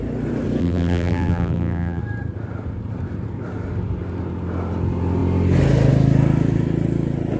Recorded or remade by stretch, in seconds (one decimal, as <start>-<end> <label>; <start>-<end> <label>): 0.0-0.6 recorded; 0.6-2.0 remade; 2.0-7.4 recorded